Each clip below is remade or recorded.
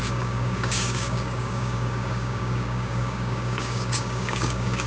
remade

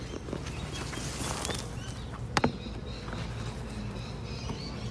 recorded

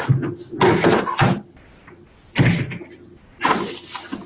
recorded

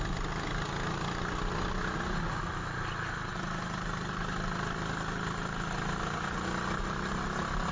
recorded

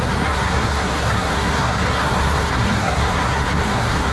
remade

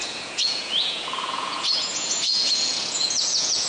remade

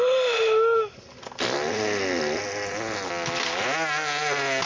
recorded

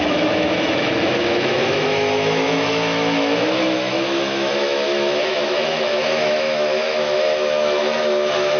remade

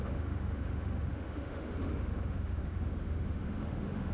remade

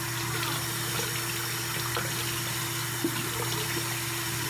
recorded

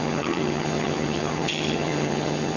remade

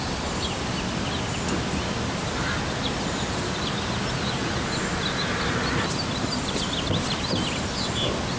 recorded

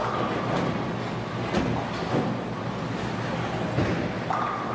recorded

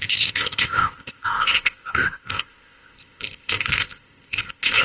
remade